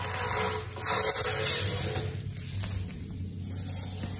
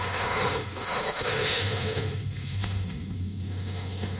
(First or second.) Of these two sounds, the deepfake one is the second